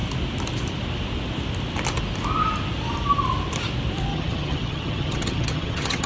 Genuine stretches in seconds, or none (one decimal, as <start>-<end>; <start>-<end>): 0.0-4.1